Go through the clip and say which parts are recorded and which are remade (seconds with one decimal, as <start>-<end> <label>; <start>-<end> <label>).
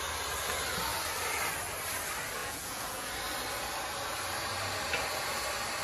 0.0-2.4 recorded; 2.4-3.1 remade; 3.1-5.8 recorded